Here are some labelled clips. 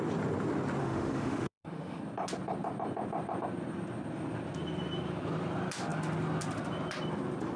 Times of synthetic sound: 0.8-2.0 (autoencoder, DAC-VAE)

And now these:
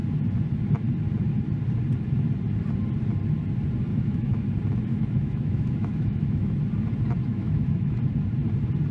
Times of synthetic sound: 3.9-4.4 (autoencoder, DAC-VAE); 4.9-6.5; 7.3-7.9

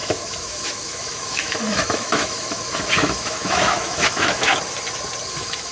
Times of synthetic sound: 0.0-4.5 (autoencoder, DAC-VAE); 5.3-5.7

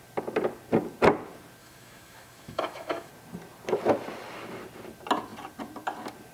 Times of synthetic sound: 1.6-3.1 (autoencoder, DAC-VAE)

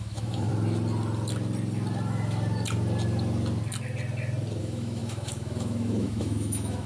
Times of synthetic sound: 0.0-0.5 (autoencoder, DAC-VAE); 4.6-6.9